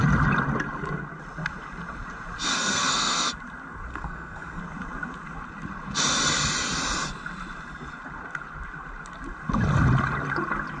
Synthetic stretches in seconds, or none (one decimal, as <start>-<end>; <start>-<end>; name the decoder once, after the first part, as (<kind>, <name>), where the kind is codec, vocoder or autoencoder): 2.5-3.3 (codec, SNAC); 3.9-4.6